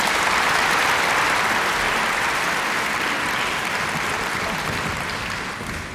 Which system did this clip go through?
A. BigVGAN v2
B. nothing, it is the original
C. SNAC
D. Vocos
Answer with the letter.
B